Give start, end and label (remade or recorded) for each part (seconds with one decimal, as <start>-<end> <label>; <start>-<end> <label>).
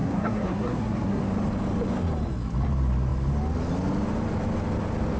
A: 0.0-1.2 remade; 1.2-5.2 recorded